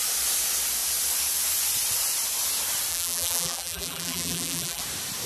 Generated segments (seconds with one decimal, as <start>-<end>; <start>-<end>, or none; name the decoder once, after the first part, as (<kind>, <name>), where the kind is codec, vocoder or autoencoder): 2.9-4.8 (vocoder, BigVGAN v2)